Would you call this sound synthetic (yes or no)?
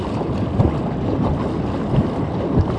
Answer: no